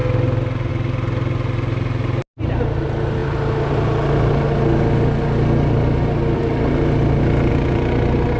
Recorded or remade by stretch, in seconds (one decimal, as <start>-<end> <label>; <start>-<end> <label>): 0.0-8.4 recorded

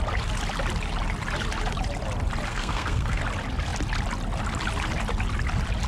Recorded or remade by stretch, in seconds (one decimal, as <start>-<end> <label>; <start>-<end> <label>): 0.0-2.5 recorded; 2.5-3.2 remade; 3.2-5.9 recorded

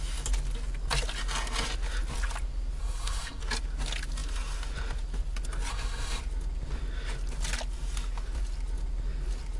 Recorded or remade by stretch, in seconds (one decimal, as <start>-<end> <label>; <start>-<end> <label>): 0.0-2.8 recorded; 2.8-3.4 remade; 3.4-5.7 recorded; 5.7-6.2 remade; 6.2-9.6 recorded

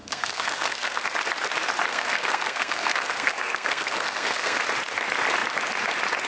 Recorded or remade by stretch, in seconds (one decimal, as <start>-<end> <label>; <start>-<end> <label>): 0.0-1.0 remade; 1.0-1.9 recorded; 1.9-4.6 remade; 4.6-6.3 recorded

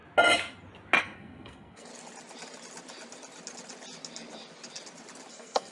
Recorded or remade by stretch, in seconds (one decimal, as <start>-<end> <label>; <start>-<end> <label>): 0.0-1.0 recorded; 1.0-1.9 remade; 1.9-5.3 recorded; 5.3-5.7 remade